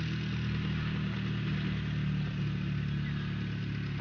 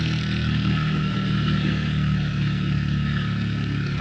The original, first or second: first